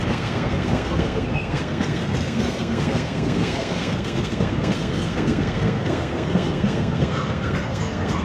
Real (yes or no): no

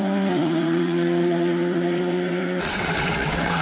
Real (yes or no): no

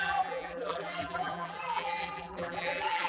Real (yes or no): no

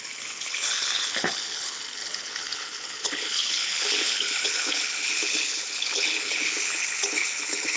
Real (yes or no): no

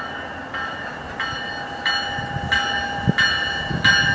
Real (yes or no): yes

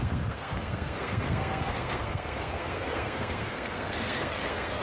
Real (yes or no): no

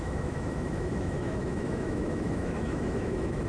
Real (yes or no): no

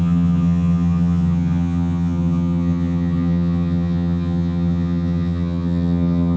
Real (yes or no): no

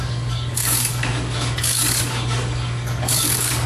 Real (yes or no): no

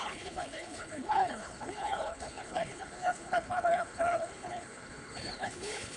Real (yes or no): no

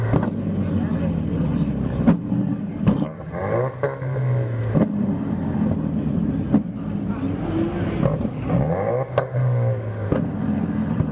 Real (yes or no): yes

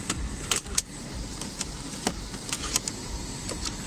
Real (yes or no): no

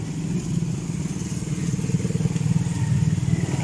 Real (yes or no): yes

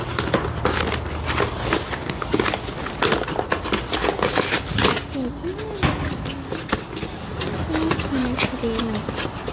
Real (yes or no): yes